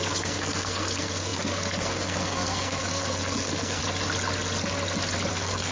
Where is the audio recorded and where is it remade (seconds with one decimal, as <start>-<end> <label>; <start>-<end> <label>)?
0.0-3.8 remade; 3.8-5.3 recorded; 5.3-5.7 remade